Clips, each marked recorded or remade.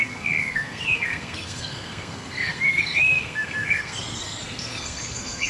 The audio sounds remade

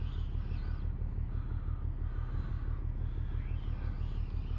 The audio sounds recorded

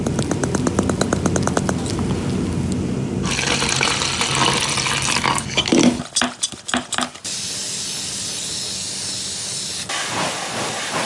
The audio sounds recorded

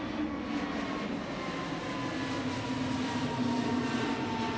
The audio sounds recorded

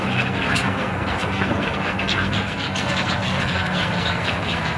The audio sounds remade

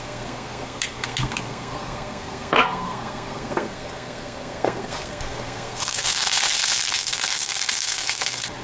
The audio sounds remade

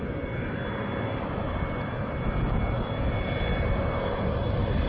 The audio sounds recorded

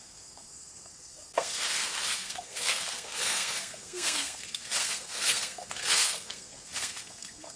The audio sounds remade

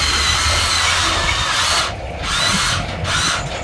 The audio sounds recorded